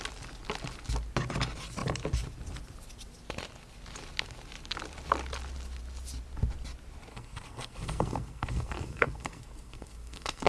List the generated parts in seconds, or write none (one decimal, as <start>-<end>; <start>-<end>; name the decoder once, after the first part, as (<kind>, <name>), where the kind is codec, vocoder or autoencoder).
7.1-10.5 (codec, SNAC)